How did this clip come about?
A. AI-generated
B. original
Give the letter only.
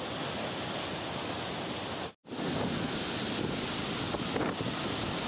B